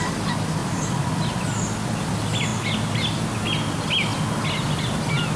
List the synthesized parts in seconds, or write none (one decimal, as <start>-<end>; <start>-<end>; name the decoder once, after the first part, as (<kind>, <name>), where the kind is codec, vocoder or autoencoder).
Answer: 0.6-1.4 (vocoder, BigVGAN v2); 2.5-3.2